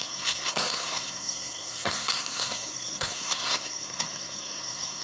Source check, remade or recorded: remade